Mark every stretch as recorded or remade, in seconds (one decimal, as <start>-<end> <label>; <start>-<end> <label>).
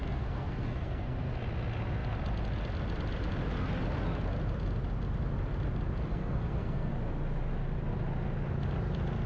0.0-1.3 remade; 1.3-6.1 recorded; 6.1-6.9 remade; 6.9-9.3 recorded